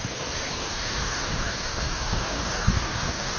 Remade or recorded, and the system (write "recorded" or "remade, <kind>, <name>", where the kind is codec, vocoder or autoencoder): remade, codec, DAC